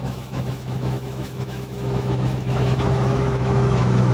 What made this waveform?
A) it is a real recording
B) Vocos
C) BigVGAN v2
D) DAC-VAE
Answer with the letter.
D